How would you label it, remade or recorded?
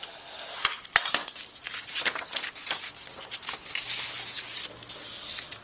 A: recorded